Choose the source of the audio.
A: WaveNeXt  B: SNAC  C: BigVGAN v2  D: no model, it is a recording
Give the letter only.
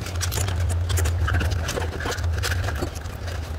D